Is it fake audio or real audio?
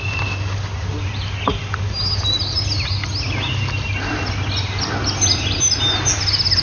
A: real